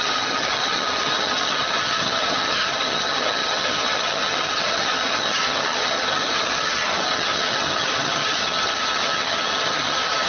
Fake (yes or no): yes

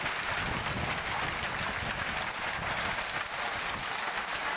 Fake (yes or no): no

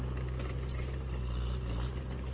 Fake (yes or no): no